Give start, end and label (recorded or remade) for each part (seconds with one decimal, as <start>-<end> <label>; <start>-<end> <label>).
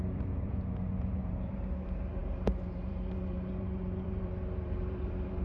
0.0-5.4 remade